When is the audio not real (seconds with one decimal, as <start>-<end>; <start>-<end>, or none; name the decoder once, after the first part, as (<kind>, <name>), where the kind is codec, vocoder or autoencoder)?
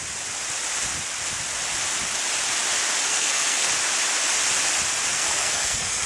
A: 3.1-3.7 (codec, SNAC); 5.1-6.1